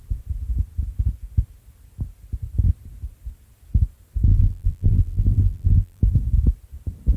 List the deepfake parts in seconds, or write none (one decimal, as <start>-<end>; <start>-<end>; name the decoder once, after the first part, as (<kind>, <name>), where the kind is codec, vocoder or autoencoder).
4.3-6.0 (vocoder, BigVGAN v2)